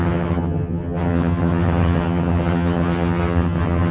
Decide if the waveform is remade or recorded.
remade